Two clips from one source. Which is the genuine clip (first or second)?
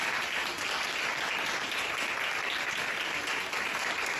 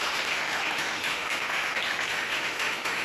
first